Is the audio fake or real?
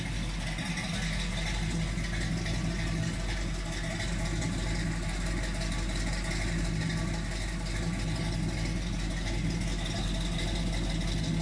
real